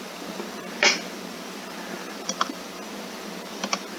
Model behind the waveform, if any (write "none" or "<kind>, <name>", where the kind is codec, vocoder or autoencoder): none